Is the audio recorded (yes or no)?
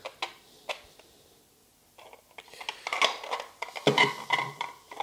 yes